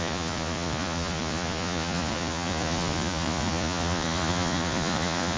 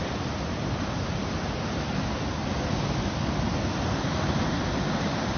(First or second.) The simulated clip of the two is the first